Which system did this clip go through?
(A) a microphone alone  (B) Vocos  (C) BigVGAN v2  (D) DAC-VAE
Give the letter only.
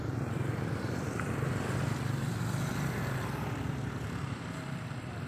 C